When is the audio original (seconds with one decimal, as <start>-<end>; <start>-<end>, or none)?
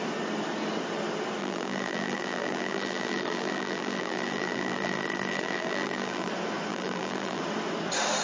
0.0-1.4; 6.3-6.7; 7.4-8.2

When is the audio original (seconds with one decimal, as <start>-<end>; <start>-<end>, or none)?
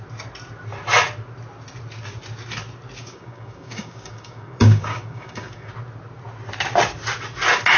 0.0-3.0; 5.7-7.8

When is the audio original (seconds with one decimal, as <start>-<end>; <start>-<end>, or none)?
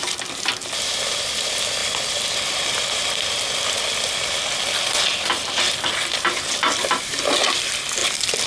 0.0-1.8; 3.6-5.1; 7.2-8.0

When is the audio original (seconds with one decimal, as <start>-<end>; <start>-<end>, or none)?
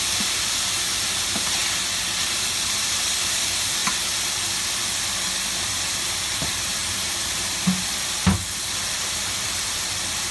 1.6-2.2; 3.8-5.5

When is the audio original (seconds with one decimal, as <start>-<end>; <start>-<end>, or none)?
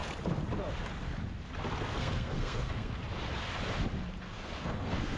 0.0-1.8; 3.0-4.2